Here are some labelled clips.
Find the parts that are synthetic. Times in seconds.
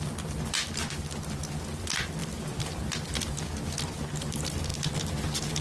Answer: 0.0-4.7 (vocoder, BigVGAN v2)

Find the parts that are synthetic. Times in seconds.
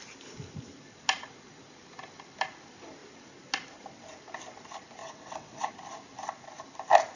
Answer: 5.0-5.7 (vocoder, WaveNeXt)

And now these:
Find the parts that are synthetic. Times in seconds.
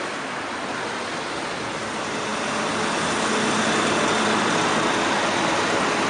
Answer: none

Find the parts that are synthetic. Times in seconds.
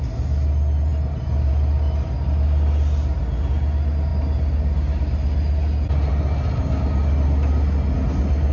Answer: none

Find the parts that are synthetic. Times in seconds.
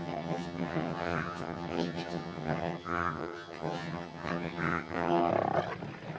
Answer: 0.0-5.3 (vocoder, HiFi-GAN)